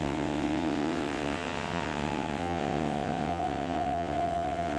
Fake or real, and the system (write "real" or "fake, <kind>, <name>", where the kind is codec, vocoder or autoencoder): fake, vocoder, WaveNeXt